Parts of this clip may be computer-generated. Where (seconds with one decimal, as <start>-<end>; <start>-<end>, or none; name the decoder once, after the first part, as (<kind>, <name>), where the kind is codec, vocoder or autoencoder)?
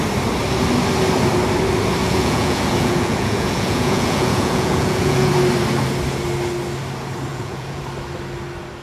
2.0-5.3 (vocoder, Vocos); 7.3-7.8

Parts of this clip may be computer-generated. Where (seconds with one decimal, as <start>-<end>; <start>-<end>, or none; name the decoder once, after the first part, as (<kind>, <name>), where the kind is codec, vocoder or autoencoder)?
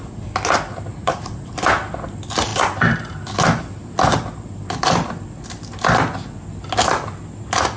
0.9-1.5 (vocoder, Vocos)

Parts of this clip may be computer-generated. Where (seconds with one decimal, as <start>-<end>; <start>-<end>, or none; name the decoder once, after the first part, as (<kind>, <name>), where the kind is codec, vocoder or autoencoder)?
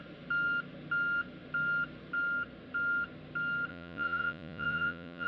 3.7-5.3 (vocoder, Vocos)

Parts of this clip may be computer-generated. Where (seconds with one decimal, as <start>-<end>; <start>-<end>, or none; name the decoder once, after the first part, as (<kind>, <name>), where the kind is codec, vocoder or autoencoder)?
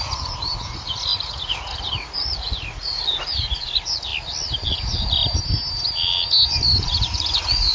0.0-4.1 (vocoder, Vocos); 4.7-5.2; 6.8-7.7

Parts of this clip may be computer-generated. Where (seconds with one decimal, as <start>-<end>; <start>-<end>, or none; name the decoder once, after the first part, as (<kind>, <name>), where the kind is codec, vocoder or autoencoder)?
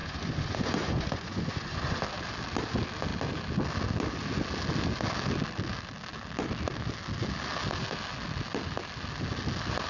0.0-2.0 (vocoder, Vocos)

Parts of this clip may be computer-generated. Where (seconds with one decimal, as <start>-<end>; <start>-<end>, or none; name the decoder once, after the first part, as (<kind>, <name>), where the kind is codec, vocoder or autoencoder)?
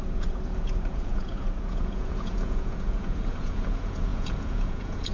0.0-5.1 (vocoder, Vocos)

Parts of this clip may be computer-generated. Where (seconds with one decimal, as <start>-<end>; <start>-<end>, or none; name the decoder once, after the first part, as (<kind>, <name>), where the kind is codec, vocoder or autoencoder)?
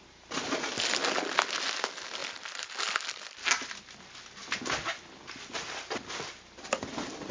none